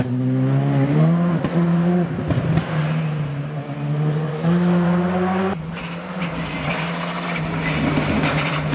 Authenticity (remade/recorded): recorded